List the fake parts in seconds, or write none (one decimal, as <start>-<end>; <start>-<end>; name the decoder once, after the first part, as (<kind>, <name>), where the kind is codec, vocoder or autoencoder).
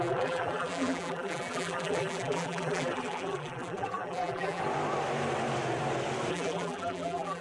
0.0-4.6 (vocoder, BigVGAN v2); 6.3-7.4